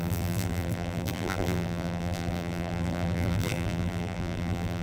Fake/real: fake